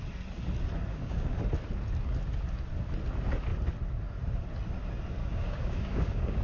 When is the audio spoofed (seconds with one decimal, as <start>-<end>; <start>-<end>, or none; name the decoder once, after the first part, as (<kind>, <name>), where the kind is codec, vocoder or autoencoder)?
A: 0.9-1.4 (codec, DAC); 5.2-6.4